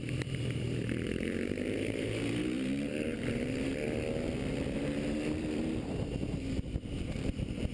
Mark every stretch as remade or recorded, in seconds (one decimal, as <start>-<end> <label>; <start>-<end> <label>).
0.0-3.7 remade; 3.7-4.5 recorded; 4.5-7.7 remade